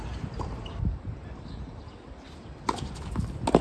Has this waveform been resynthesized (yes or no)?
no